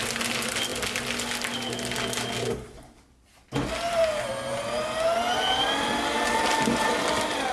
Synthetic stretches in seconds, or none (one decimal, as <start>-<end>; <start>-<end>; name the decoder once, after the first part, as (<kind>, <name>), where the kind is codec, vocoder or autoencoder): none